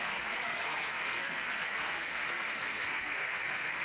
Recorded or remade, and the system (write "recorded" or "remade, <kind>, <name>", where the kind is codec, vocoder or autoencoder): remade, codec, SNAC